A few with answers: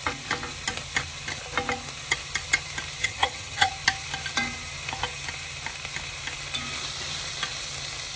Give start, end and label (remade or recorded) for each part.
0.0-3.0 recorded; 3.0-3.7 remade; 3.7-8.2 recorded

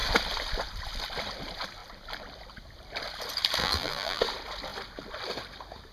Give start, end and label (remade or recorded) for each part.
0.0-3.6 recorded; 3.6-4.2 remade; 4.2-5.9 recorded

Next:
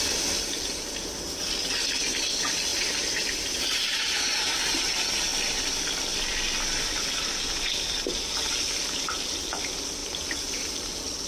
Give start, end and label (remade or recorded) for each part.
0.0-2.7 recorded; 2.7-4.8 remade; 4.8-10.0 recorded; 10.0-10.9 remade; 10.9-11.3 recorded